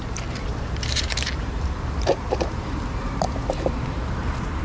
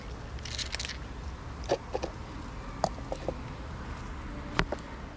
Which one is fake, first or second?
first